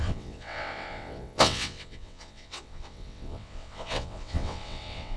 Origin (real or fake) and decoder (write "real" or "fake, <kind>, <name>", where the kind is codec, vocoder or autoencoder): fake, vocoder, WaveNeXt